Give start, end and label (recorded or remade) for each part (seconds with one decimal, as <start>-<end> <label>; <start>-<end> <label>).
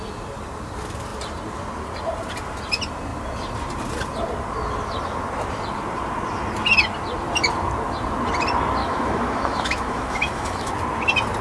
0.0-8.8 recorded; 8.8-10.7 remade; 10.7-11.4 recorded